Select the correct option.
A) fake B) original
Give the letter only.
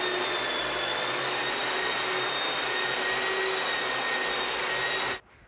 B